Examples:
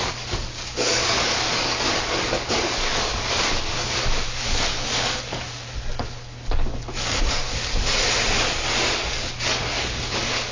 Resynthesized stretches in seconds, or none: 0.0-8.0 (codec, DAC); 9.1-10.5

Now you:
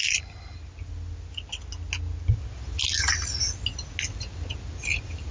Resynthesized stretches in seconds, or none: none